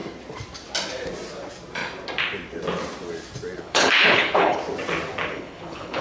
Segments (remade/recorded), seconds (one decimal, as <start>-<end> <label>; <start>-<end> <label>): 0.0-3.6 recorded; 3.6-4.6 remade; 4.6-5.3 recorded; 5.3-6.0 remade